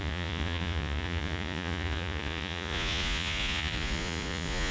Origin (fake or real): fake